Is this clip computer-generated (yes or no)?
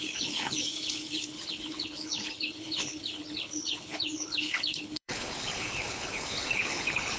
yes